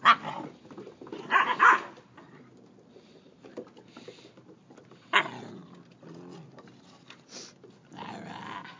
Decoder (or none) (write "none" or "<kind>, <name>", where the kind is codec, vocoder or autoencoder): none